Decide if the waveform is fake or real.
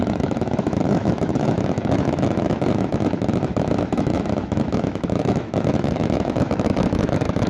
fake